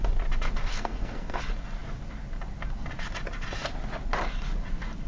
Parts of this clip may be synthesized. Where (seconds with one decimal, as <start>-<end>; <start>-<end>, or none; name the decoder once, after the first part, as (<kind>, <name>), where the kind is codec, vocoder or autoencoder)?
0.7-1.4 (codec, SNAC)